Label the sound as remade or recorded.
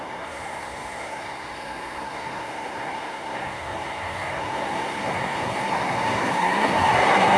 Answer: remade